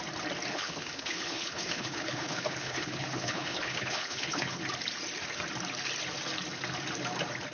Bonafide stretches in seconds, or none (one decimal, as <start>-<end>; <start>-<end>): 0.0-0.5; 4.6-7.5